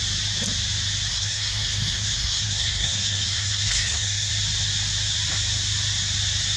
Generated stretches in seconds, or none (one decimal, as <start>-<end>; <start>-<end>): 1.1-4.3